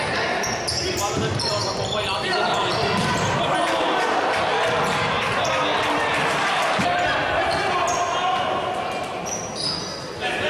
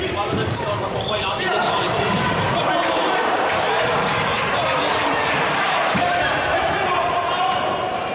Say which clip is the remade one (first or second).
second